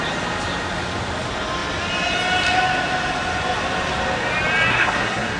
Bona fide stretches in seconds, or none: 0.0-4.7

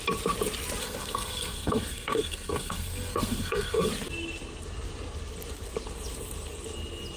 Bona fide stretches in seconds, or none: 0.0-0.8; 3.9-7.2

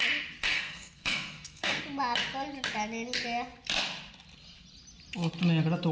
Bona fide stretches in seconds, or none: 0.0-0.5; 1.8-5.9

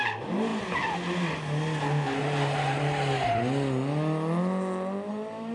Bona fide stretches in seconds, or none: 0.0-5.5

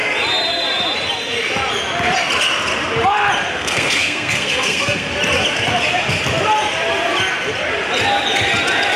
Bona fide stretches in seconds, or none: 0.0-3.5; 5.1-9.0

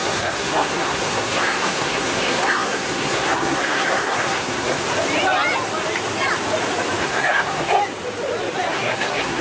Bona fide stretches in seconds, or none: 4.8-7.0; 7.8-8.7